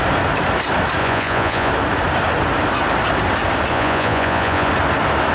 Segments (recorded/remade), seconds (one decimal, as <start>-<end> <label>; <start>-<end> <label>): 0.0-1.0 recorded; 1.0-1.7 remade; 1.7-3.7 recorded; 3.7-4.7 remade; 4.7-5.3 recorded